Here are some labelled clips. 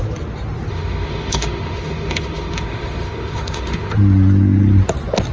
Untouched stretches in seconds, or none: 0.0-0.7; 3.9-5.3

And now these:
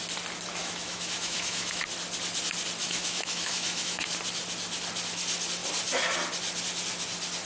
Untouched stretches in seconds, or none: 0.0-0.6; 1.9-2.8; 4.1-7.4

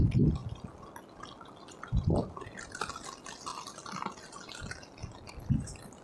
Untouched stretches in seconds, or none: 0.0-6.0